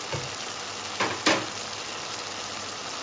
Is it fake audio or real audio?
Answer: real